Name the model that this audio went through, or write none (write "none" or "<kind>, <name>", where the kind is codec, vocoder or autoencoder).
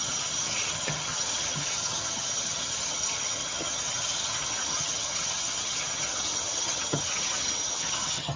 vocoder, HiFi-GAN